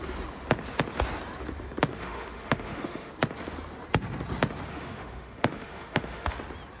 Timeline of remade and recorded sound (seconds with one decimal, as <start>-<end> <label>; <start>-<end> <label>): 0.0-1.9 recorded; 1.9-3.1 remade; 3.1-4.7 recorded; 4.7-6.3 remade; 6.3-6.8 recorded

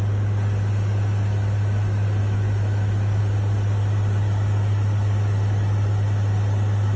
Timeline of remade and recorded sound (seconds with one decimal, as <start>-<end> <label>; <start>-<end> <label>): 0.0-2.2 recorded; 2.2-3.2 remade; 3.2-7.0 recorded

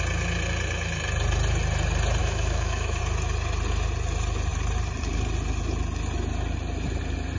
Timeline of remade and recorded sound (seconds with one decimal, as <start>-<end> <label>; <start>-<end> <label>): 0.0-2.2 recorded; 2.2-3.0 remade; 3.0-7.4 recorded

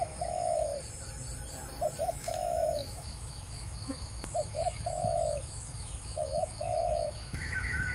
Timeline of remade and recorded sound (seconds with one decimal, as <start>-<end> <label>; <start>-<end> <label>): 0.0-0.7 remade; 0.7-2.0 recorded; 2.0-7.9 remade